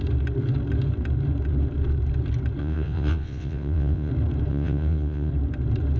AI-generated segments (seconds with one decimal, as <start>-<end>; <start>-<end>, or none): 2.6-4.1; 4.5-5.3